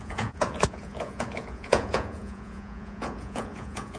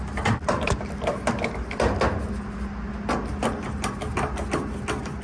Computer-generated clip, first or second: first